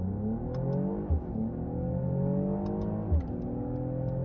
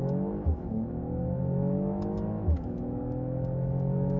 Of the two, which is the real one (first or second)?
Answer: first